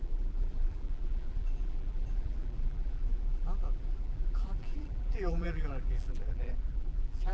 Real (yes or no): no